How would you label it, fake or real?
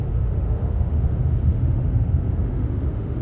fake